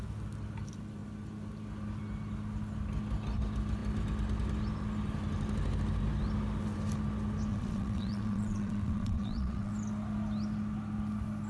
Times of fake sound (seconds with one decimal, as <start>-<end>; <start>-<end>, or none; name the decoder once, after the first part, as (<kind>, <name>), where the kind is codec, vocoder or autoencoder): 7.5-9.7 (vocoder, WaveNeXt)